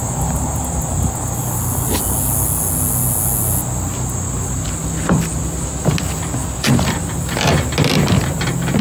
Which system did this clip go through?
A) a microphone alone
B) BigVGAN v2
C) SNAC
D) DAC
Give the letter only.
A